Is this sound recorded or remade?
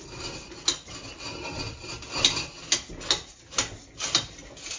recorded